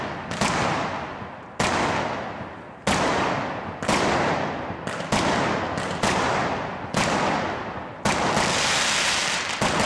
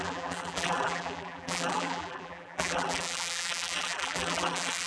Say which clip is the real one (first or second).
first